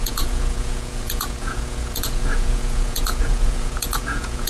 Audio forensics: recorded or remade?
remade